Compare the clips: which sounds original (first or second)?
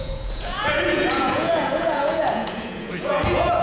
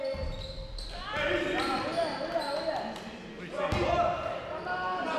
second